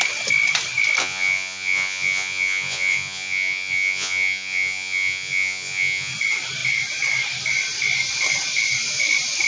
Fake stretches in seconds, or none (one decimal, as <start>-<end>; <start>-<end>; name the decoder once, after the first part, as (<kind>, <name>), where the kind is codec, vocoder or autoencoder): 1.0-6.1 (vocoder, Vocos)